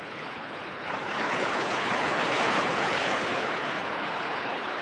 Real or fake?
fake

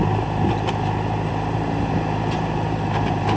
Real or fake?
real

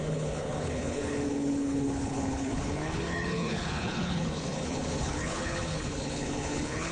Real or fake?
fake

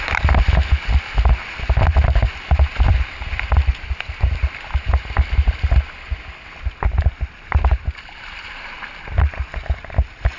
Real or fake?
real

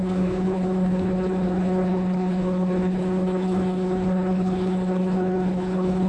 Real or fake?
fake